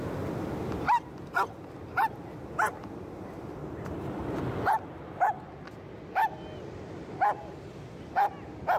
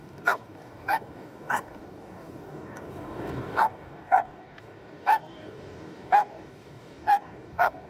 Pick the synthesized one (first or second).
second